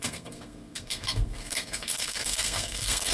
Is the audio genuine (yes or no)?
no